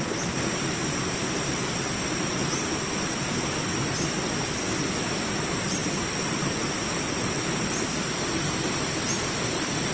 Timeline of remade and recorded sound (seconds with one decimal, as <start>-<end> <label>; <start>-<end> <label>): 0.0-9.9 recorded